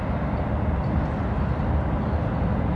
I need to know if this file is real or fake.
real